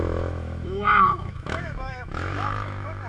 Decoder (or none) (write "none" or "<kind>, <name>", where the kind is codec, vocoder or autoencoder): autoencoder, DAC-VAE